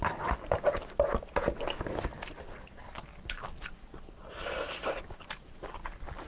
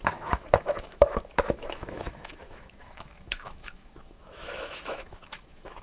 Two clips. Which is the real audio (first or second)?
first